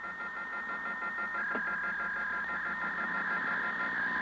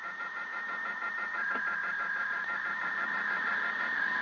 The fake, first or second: second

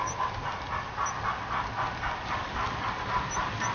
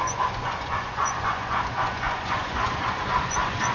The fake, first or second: second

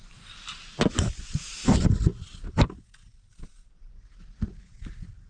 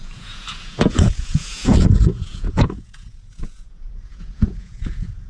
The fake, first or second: second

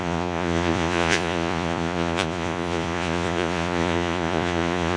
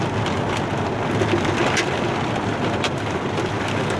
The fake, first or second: first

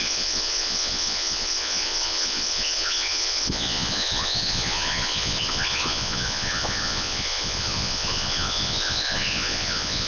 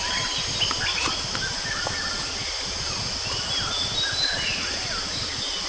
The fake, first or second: first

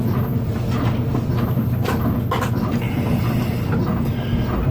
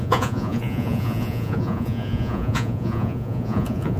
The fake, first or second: second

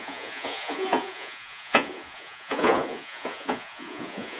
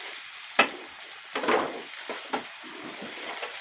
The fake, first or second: first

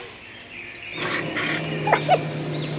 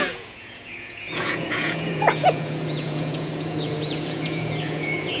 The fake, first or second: second